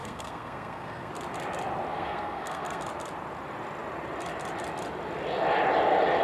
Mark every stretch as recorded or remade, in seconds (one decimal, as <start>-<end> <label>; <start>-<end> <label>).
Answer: 0.0-1.1 remade; 1.1-1.9 recorded; 1.9-2.8 remade; 2.8-6.2 recorded